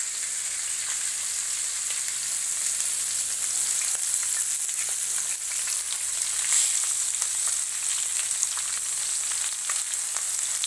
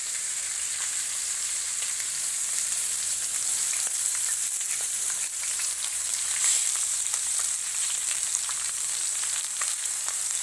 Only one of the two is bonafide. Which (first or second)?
first